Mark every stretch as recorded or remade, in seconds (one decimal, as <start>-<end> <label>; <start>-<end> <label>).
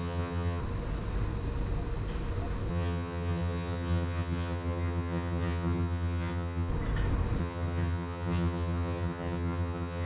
0.0-0.6 remade; 0.6-2.7 recorded; 2.7-6.7 remade; 6.7-7.4 recorded; 7.4-10.1 remade